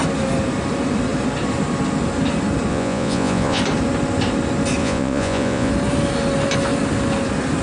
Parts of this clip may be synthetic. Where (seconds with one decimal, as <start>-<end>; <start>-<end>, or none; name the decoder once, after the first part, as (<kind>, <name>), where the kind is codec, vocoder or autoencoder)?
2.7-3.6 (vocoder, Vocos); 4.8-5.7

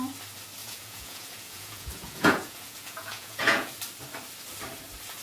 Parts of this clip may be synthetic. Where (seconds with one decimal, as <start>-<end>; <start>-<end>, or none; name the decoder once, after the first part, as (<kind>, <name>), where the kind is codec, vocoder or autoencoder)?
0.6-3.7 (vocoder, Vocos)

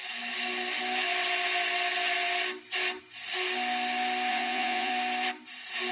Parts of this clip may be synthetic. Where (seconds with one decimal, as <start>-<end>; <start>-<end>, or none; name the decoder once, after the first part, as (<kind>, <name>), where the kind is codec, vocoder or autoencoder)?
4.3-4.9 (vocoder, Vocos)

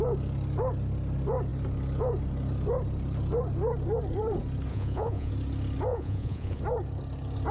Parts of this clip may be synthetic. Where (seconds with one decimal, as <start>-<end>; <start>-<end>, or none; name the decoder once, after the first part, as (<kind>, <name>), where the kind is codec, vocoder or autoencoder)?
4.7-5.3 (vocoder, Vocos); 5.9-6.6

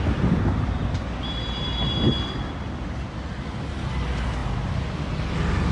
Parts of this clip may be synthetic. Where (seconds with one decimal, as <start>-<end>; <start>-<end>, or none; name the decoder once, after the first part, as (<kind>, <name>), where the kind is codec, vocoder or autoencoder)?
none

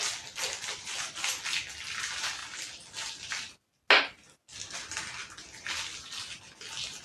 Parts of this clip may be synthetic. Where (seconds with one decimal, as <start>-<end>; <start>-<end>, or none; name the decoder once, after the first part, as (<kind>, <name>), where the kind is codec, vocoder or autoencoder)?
none

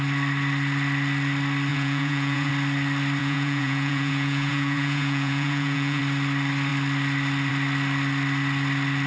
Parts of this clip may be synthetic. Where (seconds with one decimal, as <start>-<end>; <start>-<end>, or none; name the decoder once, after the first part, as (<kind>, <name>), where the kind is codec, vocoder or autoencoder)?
1.7-2.5 (vocoder, Vocos); 3.2-6.0